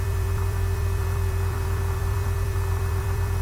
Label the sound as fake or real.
fake